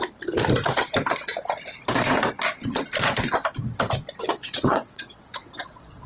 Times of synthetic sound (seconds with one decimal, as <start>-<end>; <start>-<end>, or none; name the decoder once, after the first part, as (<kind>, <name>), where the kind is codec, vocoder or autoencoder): 4.2-6.1 (vocoder, WaveNeXt)